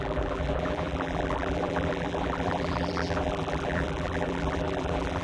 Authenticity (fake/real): fake